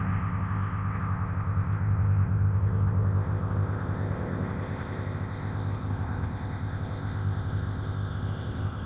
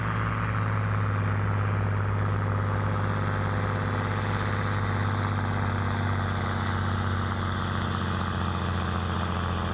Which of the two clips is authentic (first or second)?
second